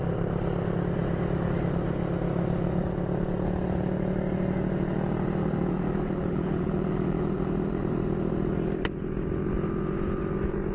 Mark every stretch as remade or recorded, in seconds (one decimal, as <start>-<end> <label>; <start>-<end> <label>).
0.0-5.4 recorded; 5.4-7.8 remade; 7.8-10.7 recorded